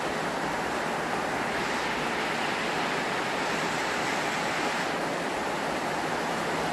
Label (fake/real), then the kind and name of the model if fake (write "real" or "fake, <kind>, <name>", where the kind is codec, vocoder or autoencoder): real